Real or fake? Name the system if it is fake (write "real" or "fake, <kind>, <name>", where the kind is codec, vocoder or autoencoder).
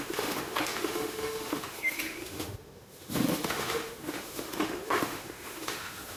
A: fake, autoencoder, DAC-VAE